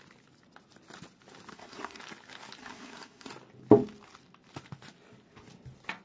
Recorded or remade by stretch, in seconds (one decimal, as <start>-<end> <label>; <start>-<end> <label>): 0.0-1.5 recorded; 1.5-2.0 remade; 2.0-2.6 recorded; 2.6-3.3 remade; 3.3-6.0 recorded